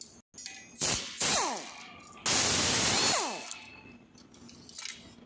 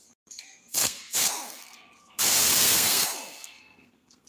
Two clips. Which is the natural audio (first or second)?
first